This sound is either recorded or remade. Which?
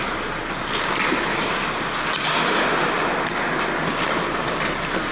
recorded